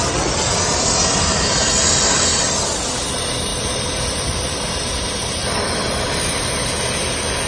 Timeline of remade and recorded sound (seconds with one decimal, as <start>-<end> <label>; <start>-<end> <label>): 0.0-3.5 recorded; 3.5-6.0 remade; 6.0-7.5 recorded